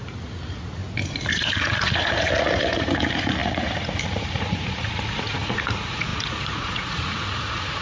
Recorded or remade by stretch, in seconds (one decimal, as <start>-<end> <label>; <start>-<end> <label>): 0.0-0.8 remade; 0.8-1.3 recorded; 1.3-7.8 remade